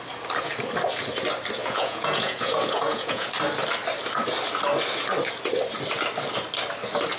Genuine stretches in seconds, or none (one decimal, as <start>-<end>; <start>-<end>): 0.0-1.6; 3.3-7.2